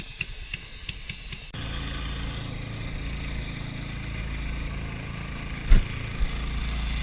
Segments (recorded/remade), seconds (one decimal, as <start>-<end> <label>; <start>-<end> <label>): 0.0-7.0 recorded

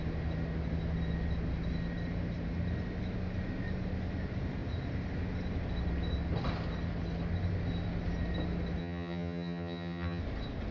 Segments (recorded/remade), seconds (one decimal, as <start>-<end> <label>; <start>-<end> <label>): 0.0-8.8 recorded; 8.8-10.2 remade; 10.2-10.7 recorded

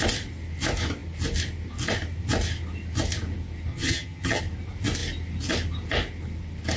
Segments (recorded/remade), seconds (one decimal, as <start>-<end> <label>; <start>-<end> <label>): 0.0-3.7 recorded; 3.7-4.4 remade; 4.4-6.8 recorded

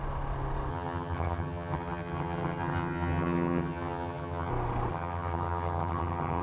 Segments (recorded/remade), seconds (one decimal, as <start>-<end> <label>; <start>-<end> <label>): 0.0-0.7 recorded; 0.7-4.5 remade; 4.5-4.9 recorded; 4.9-6.4 remade

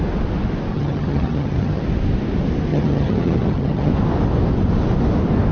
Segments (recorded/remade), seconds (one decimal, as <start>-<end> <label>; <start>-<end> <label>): 0.0-0.7 recorded; 0.7-1.8 remade; 1.8-2.7 recorded; 2.7-3.9 remade; 3.9-5.5 recorded

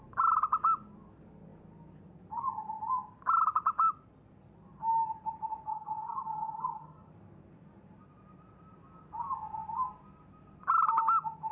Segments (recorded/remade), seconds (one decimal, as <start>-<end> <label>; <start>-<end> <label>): 0.0-5.7 recorded; 5.7-7.1 remade; 7.1-11.5 recorded